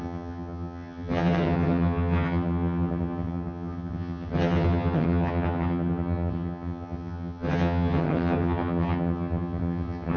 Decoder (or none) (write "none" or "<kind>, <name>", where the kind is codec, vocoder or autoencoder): vocoder, HiFi-GAN